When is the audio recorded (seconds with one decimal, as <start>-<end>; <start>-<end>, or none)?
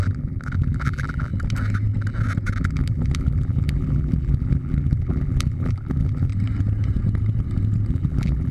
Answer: 1.3-2.6; 6.3-7.9